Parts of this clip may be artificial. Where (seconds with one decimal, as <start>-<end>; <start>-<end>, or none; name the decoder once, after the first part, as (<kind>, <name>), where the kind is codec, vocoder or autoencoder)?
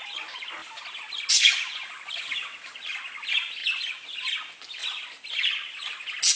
none